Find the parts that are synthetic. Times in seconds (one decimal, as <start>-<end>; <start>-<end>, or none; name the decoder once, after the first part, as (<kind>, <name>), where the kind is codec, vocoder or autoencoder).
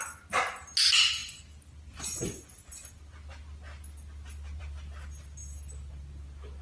none